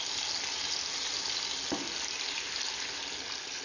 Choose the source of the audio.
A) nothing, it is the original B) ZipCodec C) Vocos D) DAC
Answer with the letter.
A